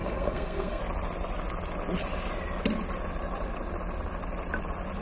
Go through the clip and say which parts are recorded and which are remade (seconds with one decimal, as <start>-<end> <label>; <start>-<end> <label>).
0.0-0.8 remade; 0.8-5.0 recorded